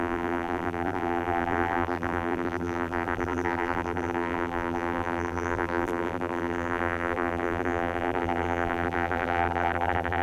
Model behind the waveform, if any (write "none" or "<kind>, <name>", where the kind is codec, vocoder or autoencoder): vocoder, BigVGAN v2